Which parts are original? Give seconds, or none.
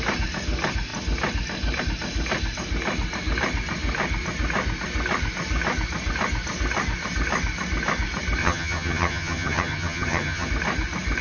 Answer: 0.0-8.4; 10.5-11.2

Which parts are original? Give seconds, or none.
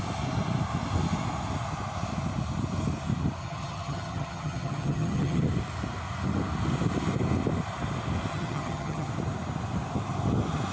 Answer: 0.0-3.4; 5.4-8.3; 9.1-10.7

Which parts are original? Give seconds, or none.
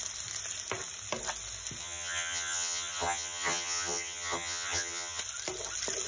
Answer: 0.0-1.8; 5.2-6.1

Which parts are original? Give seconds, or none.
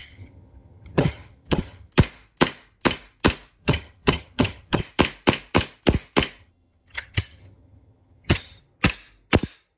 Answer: 1.9-3.6; 4.8-6.4; 8.6-9.8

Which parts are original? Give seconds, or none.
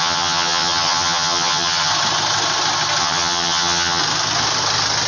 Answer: 1.9-3.0; 4.0-5.1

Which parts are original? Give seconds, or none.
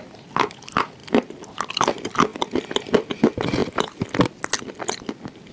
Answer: 0.0-5.5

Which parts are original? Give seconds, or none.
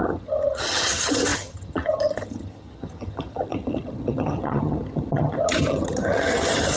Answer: none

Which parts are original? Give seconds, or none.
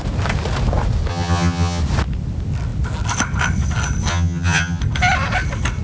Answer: 0.0-1.1; 1.8-4.1; 4.8-5.8